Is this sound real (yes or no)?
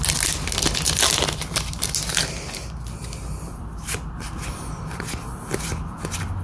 yes